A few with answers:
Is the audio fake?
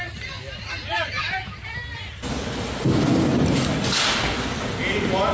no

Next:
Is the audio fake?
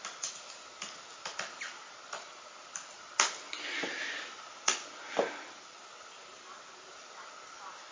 no